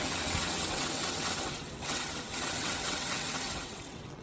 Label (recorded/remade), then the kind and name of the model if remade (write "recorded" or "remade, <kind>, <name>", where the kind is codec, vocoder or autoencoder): remade, vocoder, WaveNeXt